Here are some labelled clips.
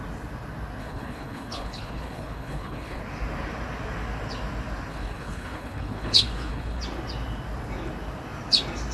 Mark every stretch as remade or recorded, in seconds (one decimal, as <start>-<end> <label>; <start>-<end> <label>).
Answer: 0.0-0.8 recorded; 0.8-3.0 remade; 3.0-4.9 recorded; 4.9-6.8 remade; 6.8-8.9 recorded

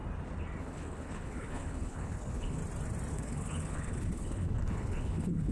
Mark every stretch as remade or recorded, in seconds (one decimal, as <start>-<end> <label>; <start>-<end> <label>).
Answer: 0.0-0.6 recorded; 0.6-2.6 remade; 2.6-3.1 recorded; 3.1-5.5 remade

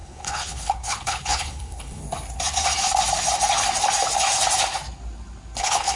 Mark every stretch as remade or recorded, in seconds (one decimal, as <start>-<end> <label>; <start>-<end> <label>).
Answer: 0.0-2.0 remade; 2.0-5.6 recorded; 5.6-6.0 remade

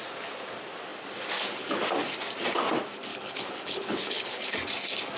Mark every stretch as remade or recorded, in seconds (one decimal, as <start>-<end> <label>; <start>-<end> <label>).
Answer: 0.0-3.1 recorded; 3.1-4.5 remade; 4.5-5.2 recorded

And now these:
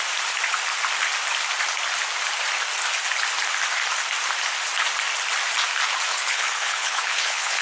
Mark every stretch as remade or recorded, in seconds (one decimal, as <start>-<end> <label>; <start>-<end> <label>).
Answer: 0.0-6.1 recorded; 6.1-7.6 remade

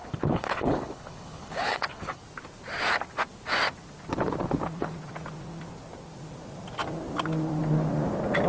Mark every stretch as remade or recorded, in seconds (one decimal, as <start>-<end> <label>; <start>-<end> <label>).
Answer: 0.0-2.2 remade; 2.2-8.5 recorded

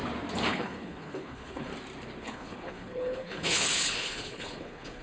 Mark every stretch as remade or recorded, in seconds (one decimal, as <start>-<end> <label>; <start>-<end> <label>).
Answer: 0.0-0.5 recorded; 0.5-1.7 remade; 1.7-2.2 recorded; 2.2-5.0 remade